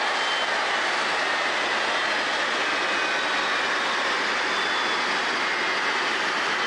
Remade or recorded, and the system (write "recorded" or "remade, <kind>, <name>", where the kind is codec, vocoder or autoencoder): recorded